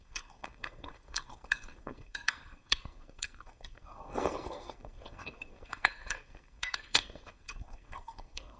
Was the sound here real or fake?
fake